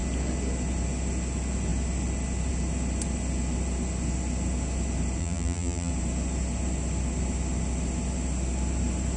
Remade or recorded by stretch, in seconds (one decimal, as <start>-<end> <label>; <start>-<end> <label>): 0.0-5.2 recorded; 5.2-5.9 remade; 5.9-9.2 recorded